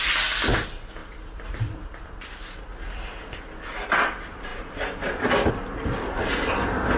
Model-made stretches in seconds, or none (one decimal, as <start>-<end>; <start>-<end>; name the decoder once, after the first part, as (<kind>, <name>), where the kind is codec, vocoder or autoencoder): 1.0-3.4 (vocoder, BigVGAN v2); 4.5-5.5